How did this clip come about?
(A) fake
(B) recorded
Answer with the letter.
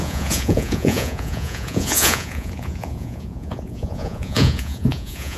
A